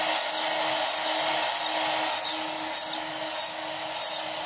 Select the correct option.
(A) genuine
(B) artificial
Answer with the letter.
A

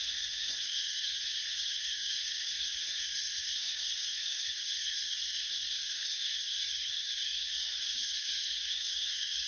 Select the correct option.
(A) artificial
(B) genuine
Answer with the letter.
A